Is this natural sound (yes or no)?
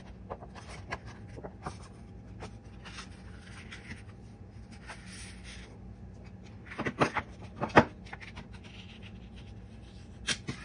yes